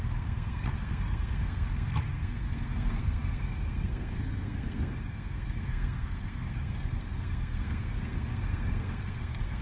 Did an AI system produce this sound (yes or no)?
yes